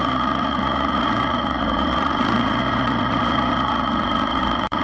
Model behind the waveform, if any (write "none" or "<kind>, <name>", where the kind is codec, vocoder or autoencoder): vocoder, Vocos